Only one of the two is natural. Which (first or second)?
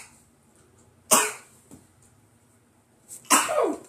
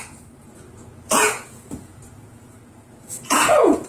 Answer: first